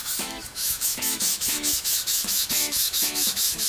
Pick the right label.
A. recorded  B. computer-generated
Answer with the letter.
B